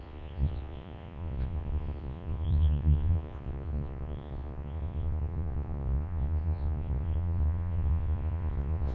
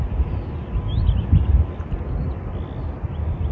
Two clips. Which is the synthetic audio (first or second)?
first